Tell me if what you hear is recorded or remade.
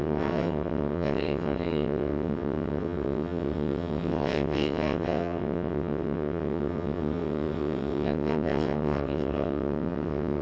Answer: remade